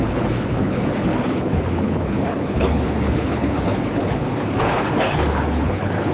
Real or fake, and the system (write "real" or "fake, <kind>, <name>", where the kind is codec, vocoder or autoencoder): fake, codec, HILCodec